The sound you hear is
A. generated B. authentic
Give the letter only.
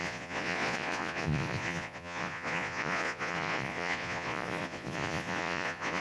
A